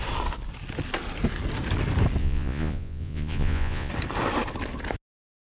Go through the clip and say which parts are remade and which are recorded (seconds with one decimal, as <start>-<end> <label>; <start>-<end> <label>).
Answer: 0.0-2.2 recorded; 2.2-3.9 remade; 3.9-5.4 recorded